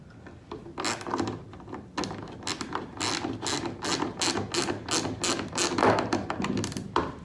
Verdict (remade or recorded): recorded